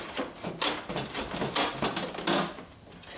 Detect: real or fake real